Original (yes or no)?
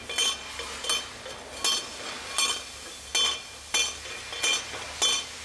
yes